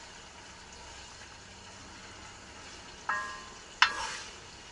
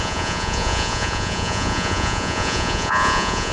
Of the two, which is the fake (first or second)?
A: second